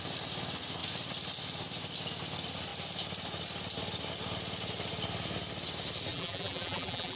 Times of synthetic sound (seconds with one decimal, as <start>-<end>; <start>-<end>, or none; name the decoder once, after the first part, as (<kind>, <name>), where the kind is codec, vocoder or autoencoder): 6.1-7.2 (vocoder, BigVGAN v2)